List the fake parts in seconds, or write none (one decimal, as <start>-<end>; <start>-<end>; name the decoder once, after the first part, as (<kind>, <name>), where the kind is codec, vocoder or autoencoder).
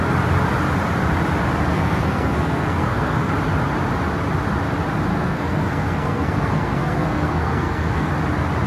1.7-3.3 (codec, SNAC); 5.1-8.1